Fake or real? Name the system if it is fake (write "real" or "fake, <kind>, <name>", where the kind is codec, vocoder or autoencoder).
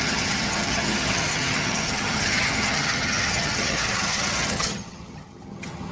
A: fake, vocoder, HiFi-GAN